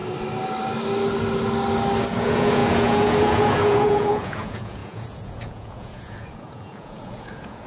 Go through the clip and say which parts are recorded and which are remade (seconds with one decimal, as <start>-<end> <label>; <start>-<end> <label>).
0.0-2.0 recorded; 2.0-7.7 remade